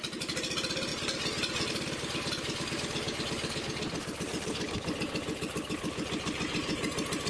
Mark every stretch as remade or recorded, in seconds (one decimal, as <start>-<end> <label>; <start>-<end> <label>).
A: 0.0-7.3 recorded